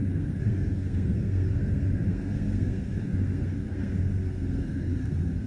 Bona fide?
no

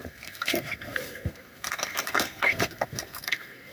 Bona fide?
no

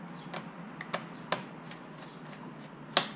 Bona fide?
yes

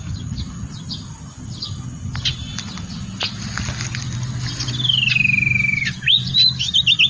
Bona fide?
yes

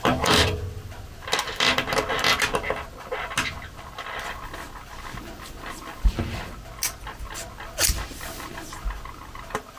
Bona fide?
yes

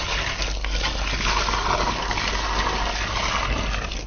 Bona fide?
yes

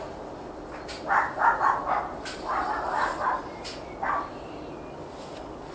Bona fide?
yes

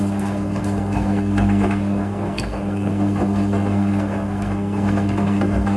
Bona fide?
no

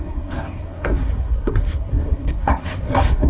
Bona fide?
no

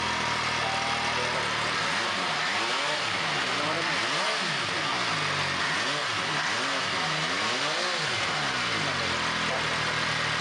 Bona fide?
yes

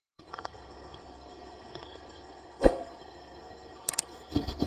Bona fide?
no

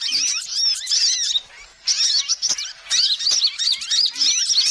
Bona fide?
yes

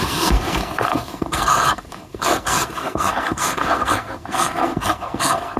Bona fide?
no